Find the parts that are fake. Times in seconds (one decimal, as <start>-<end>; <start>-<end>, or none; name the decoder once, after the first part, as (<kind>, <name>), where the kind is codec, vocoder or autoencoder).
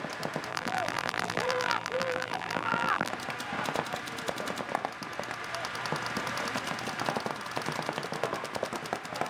0.5-3.1 (vocoder, BigVGAN v2)